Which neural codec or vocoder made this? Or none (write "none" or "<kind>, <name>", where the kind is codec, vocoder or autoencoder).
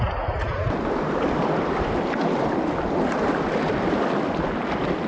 none